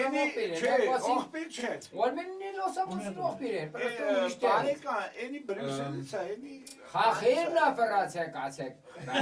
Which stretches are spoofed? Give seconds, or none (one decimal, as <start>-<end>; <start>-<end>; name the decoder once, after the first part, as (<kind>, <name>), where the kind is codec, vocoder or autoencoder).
none